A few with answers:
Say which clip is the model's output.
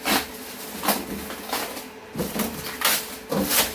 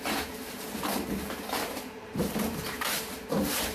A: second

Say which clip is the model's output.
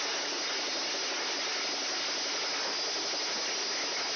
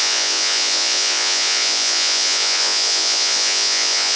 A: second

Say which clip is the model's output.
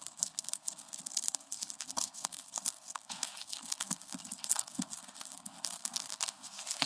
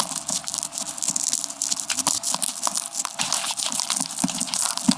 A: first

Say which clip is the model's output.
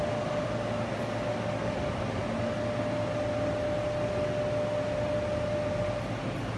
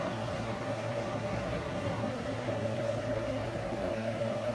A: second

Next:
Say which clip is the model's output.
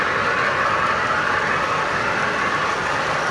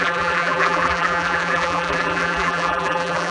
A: second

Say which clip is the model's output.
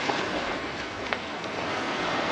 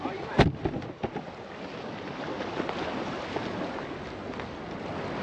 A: first